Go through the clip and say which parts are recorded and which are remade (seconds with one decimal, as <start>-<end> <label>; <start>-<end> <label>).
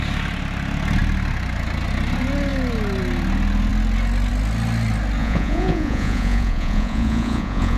0.0-5.2 recorded; 5.2-7.8 remade